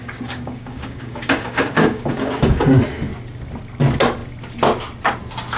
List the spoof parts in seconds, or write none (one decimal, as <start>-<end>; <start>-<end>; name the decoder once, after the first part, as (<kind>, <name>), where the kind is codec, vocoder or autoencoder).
0.0-2.8 (codec, DAC)